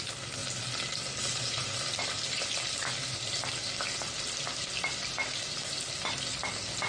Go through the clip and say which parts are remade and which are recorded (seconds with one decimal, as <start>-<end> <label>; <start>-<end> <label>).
0.0-6.9 recorded